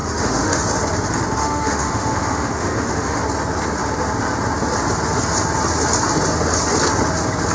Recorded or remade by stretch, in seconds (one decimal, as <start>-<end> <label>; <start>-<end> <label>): 0.0-0.6 remade; 0.6-1.4 recorded; 1.4-3.2 remade; 3.2-7.5 recorded